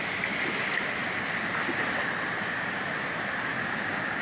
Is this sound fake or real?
real